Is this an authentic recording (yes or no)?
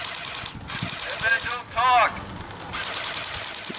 yes